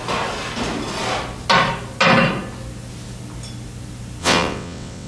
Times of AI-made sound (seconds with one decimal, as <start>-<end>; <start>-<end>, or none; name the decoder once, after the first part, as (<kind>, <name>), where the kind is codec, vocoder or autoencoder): 4.2-5.1 (vocoder, WaveNeXt)